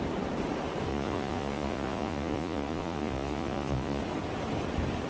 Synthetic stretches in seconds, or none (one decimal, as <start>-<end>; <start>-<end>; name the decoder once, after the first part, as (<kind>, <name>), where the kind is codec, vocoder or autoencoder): 0.9-4.0 (vocoder, Vocos)